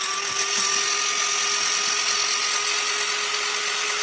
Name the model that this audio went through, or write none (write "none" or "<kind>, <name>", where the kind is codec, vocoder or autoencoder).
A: none